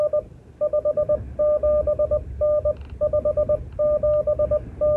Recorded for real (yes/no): yes